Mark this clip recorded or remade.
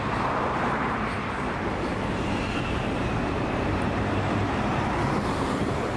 remade